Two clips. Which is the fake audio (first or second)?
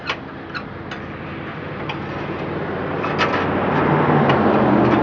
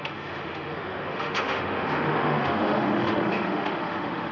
second